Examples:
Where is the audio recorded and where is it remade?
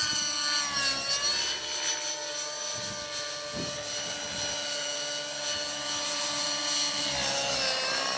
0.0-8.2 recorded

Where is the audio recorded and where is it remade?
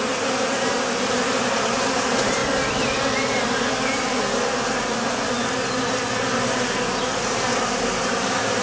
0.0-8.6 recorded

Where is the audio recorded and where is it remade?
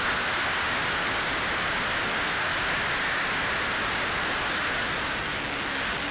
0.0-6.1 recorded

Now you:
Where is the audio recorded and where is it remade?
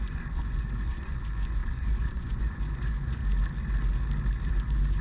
0.0-3.2 remade; 3.2-4.5 recorded; 4.5-5.0 remade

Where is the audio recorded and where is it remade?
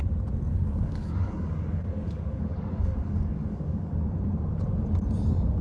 0.0-0.5 recorded; 0.5-3.9 remade; 3.9-5.6 recorded